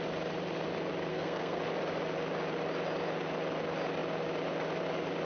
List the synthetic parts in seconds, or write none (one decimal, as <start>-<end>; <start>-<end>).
1.1-1.6